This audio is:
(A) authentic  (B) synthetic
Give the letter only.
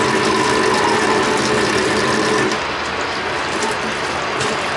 A